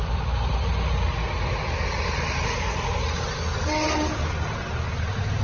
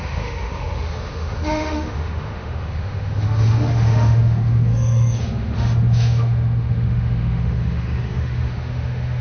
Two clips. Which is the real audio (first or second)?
first